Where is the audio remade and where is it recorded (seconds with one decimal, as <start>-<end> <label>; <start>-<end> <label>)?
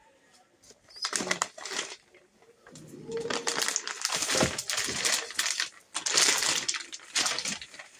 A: 0.0-8.0 recorded